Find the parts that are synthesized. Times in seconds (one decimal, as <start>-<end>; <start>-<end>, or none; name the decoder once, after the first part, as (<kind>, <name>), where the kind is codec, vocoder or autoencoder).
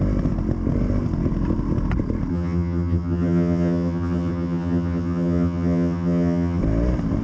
2.3-6.6 (vocoder, HiFi-GAN)